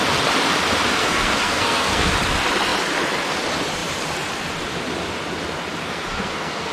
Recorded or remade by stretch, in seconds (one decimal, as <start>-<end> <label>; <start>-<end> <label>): 0.0-1.0 recorded; 1.0-2.1 remade; 2.1-5.8 recorded; 5.8-6.7 remade